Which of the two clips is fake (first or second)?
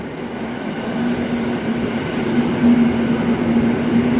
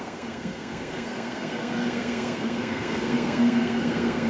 second